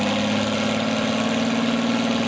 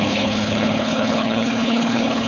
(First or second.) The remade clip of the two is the second